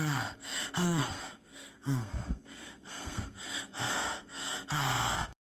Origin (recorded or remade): remade